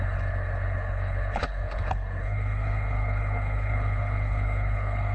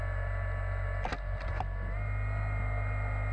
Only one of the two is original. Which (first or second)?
second